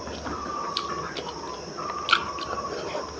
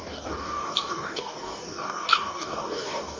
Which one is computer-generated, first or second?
second